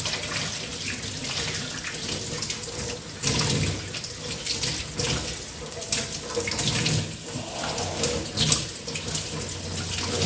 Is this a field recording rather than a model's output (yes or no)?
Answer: yes